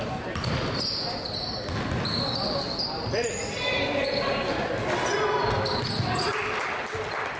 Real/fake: real